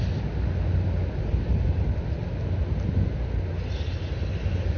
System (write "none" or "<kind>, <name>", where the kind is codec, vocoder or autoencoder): none